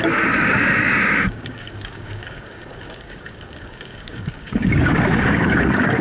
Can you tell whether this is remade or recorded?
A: remade